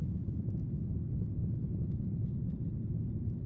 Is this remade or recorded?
recorded